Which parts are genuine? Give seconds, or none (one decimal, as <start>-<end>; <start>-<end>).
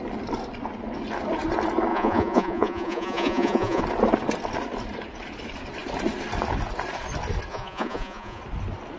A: 0.0-1.9; 3.8-7.5; 8.4-9.0